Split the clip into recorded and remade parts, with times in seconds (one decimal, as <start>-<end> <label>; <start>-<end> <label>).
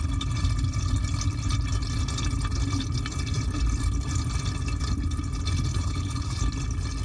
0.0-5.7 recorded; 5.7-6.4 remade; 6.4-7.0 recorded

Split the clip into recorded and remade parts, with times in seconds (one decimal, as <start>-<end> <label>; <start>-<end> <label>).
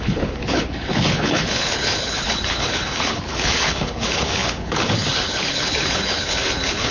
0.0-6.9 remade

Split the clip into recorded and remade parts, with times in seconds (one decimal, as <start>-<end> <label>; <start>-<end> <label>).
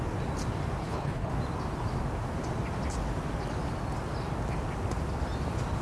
0.0-0.8 recorded; 0.8-1.3 remade; 1.3-5.8 recorded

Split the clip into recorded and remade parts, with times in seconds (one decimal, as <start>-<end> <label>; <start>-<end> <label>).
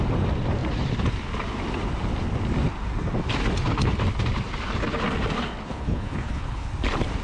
0.0-5.7 recorded; 5.7-6.7 remade; 6.7-7.2 recorded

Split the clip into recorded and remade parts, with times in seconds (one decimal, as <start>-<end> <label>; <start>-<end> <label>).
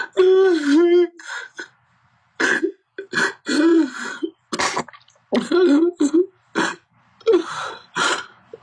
0.0-8.6 recorded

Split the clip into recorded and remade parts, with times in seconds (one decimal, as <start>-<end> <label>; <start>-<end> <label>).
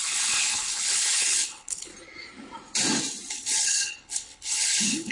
0.0-1.9 remade; 1.9-3.3 recorded; 3.3-5.1 remade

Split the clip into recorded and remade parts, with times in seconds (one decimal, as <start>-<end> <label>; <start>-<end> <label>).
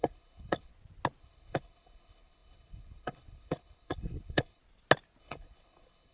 0.0-0.7 remade; 0.7-1.2 recorded; 1.2-4.6 remade; 4.6-5.2 recorded; 5.2-6.1 remade